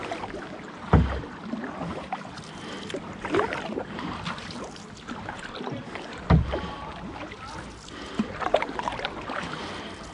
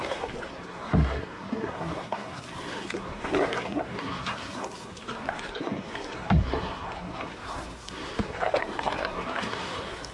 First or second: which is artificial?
second